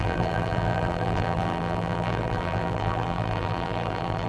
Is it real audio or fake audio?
fake